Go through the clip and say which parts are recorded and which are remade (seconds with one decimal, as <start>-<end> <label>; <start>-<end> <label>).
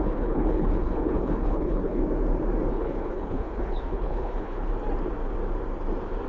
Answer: 0.0-2.0 remade; 2.0-2.7 recorded; 2.7-4.7 remade; 4.7-6.3 recorded